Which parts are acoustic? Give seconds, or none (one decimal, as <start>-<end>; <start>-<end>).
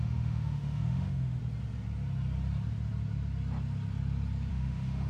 1.4-4.5